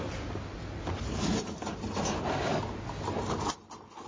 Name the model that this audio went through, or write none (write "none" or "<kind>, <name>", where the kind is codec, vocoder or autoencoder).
none